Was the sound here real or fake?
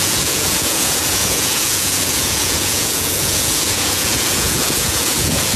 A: fake